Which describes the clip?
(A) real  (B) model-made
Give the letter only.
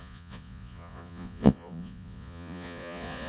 B